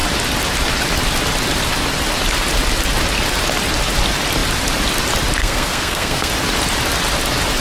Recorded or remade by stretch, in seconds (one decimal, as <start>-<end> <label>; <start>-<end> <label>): 0.0-5.4 recorded; 5.4-6.3 remade; 6.3-7.6 recorded